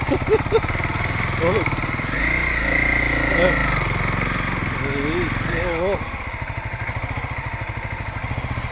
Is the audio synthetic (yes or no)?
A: no